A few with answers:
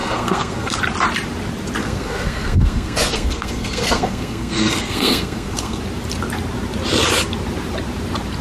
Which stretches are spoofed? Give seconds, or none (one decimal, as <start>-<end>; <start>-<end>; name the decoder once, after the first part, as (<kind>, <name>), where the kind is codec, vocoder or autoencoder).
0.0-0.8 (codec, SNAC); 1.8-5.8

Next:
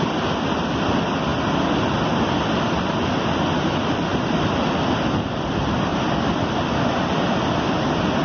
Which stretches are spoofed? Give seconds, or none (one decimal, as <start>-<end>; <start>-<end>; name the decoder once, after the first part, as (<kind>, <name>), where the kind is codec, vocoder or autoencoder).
none

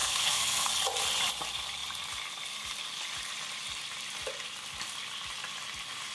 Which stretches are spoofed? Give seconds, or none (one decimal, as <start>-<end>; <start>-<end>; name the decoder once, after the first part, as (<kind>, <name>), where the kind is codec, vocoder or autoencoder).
0.0-0.7 (codec, SNAC)

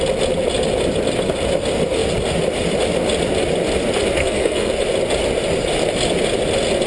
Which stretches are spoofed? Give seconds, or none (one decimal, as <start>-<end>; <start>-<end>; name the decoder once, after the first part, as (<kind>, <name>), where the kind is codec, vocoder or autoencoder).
4.2-4.7 (codec, SNAC)

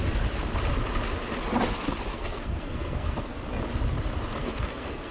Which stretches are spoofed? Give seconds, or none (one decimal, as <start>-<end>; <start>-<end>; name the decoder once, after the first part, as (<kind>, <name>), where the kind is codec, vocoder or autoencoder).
2.1-3.3 (codec, SNAC); 4.4-5.1

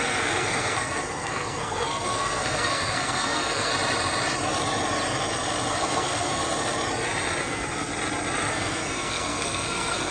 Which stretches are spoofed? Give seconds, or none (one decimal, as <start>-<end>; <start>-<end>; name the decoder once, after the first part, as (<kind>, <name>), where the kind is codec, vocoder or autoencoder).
0.0-3.7 (codec, SNAC); 5.7-6.4; 7.4-7.9; 8.5-10.1

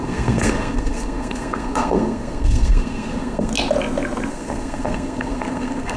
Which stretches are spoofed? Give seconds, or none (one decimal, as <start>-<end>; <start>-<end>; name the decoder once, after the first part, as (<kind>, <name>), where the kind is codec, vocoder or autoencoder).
0.0-3.5 (codec, SNAC); 4.3-6.0

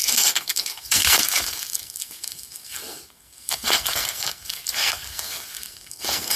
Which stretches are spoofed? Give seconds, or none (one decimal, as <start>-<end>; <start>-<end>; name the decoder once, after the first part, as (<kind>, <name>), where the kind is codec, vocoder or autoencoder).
0.0-6.4 (codec, SNAC)